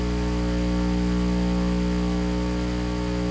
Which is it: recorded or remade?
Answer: recorded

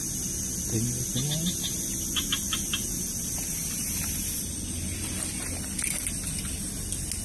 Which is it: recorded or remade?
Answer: recorded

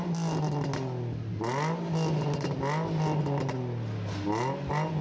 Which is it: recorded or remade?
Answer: recorded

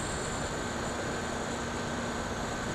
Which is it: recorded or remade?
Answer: recorded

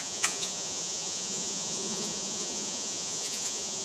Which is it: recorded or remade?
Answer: remade